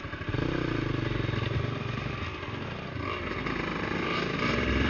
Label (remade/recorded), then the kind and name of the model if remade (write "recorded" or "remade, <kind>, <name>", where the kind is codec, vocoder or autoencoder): recorded